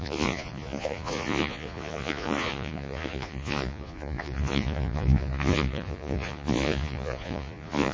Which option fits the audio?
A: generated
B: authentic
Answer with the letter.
A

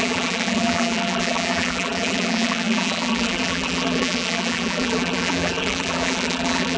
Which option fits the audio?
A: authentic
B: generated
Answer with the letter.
B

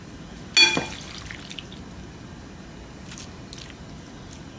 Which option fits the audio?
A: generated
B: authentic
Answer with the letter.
B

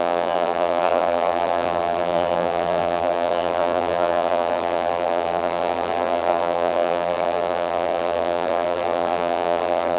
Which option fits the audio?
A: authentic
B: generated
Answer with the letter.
B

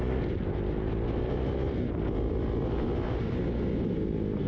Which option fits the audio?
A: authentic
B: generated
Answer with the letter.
A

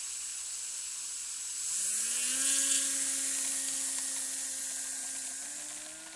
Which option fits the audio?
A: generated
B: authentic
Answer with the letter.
B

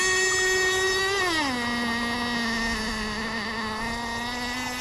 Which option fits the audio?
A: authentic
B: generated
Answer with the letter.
A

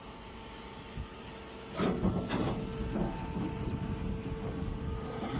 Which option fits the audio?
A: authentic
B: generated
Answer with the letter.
A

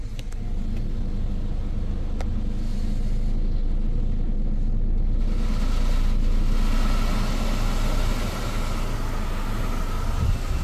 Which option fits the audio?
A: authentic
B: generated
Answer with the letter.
A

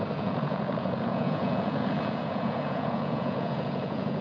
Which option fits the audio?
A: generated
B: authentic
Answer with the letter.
A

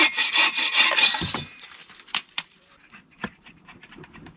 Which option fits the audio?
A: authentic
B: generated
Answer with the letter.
B